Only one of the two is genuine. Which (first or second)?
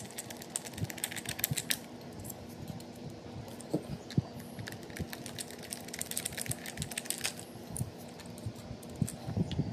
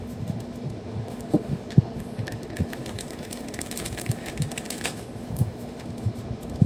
first